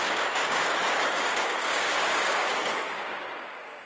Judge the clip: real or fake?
fake